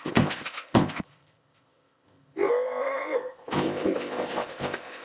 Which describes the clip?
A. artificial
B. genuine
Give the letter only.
A